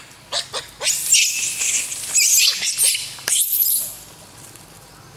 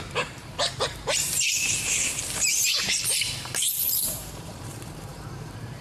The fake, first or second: second